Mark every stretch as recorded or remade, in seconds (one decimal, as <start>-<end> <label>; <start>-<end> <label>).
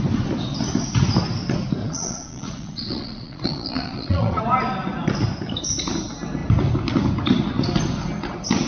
0.0-1.8 recorded; 1.8-4.4 remade; 4.4-8.7 recorded